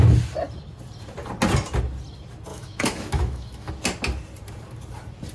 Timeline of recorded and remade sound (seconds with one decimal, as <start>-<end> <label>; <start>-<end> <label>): 0.0-2.5 recorded; 2.5-3.7 remade; 3.7-5.3 recorded